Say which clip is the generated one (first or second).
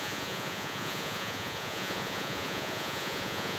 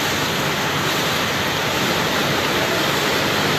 first